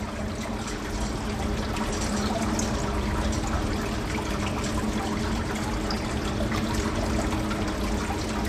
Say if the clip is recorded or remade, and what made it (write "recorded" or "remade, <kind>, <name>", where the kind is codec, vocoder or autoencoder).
recorded